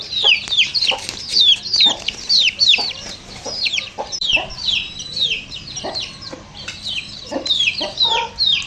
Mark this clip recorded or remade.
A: remade